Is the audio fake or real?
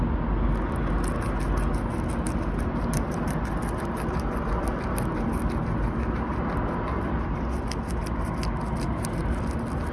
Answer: real